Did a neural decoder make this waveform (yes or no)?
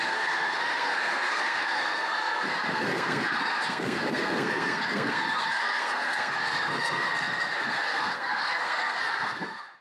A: yes